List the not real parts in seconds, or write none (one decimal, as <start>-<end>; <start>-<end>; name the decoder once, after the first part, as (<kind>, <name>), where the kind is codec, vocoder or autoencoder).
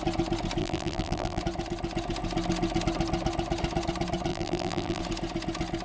0.6-1.4 (vocoder, BigVGAN v2); 4.3-5.0